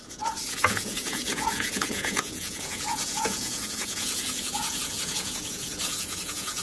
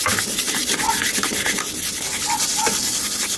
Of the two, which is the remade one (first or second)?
first